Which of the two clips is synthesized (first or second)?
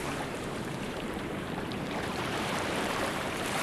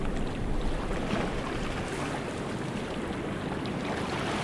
first